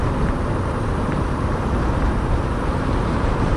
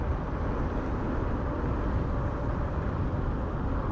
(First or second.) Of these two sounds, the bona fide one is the second